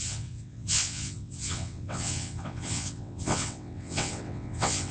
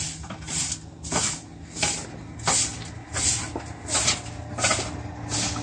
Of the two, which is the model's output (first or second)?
first